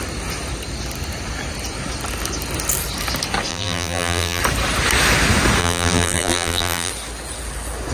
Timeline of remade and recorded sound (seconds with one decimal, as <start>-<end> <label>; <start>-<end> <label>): 0.0-3.5 recorded; 3.5-4.4 remade; 4.4-5.6 recorded; 5.6-6.9 remade; 6.9-7.9 recorded